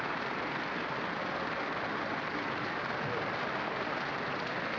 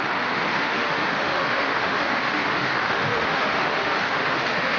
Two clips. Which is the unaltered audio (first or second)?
first